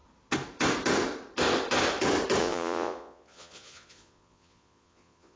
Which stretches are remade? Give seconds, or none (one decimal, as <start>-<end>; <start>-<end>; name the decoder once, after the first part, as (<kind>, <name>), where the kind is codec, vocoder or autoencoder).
2.4-5.4 (vocoder, Vocos)